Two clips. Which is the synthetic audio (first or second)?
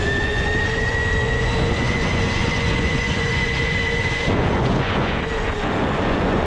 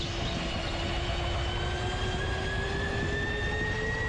first